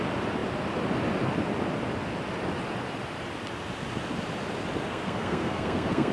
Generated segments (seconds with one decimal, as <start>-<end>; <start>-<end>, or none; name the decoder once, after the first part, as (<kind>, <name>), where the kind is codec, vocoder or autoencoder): 4.9-6.1 (codec, SNAC)